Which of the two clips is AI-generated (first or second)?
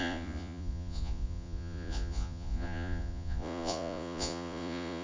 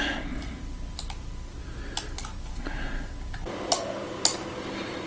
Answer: first